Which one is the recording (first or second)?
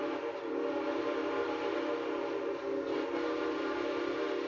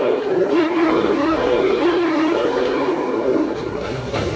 first